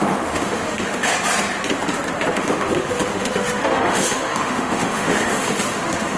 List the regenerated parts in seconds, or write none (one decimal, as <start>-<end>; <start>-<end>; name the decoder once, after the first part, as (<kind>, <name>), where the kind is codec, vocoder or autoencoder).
0.0-1.1 (autoencoder, DAC-VAE); 2.3-6.2